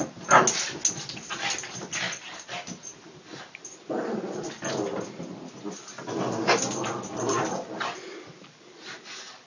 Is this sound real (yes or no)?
yes